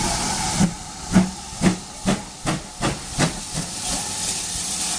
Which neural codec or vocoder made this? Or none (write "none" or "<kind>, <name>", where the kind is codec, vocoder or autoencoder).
none